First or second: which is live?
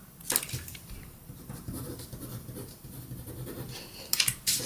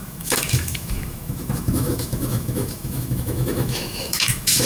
first